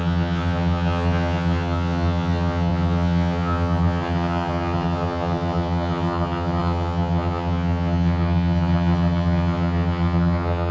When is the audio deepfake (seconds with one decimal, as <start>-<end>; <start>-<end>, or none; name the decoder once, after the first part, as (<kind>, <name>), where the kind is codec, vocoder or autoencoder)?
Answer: 0.0-10.7 (vocoder, HiFi-GAN)